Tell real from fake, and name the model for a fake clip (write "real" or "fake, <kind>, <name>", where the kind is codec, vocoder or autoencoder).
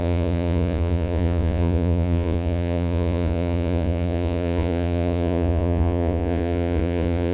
fake, vocoder, Vocos